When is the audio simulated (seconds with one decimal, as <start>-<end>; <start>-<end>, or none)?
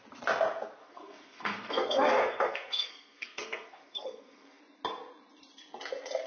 0.8-4.6